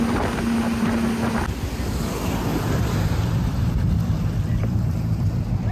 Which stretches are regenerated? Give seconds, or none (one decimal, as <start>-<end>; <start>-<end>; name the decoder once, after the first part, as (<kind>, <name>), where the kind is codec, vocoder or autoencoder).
2.5-3.9 (vocoder, BigVGAN v2); 4.6-5.7